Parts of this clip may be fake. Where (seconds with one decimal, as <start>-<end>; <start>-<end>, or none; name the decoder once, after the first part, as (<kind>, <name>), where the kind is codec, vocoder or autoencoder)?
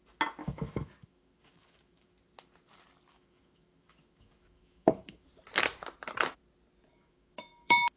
0.4-2.1 (autoencoder, DAC-VAE); 3.1-5.3; 6.9-8.0